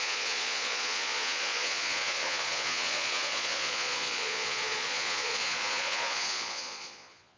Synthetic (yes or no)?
yes